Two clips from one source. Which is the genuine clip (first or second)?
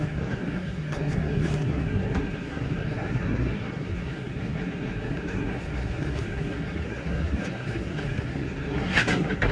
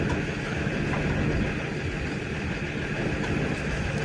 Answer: second